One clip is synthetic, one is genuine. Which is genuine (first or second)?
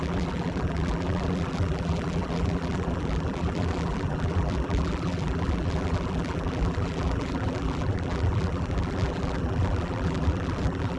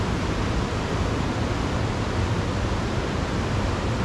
second